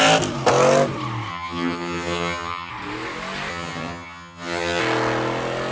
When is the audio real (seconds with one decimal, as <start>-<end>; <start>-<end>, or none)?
0.0-1.3; 2.7-3.5; 4.8-5.7